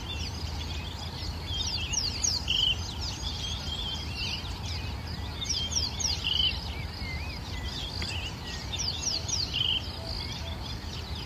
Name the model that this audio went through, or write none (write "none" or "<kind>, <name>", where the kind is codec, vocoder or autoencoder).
none